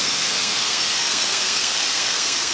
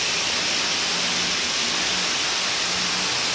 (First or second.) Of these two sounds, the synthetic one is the first